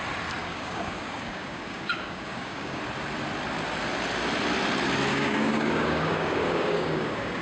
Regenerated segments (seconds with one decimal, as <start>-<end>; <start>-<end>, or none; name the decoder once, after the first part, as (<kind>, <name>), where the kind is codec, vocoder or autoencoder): 0.4-2.8 (codec, DAC); 5.1-7.4